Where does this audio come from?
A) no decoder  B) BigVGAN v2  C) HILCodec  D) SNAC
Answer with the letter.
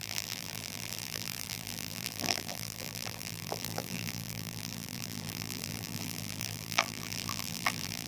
B